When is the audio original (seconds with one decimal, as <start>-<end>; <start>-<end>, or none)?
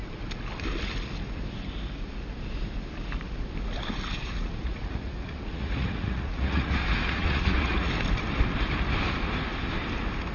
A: 0.0-4.1; 7.9-10.3